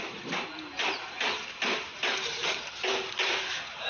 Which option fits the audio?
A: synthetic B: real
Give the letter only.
B